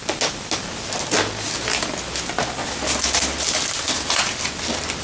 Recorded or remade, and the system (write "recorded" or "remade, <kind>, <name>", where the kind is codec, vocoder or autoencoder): recorded